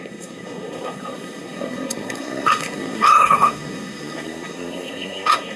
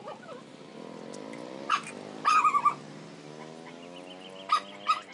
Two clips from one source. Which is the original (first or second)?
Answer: second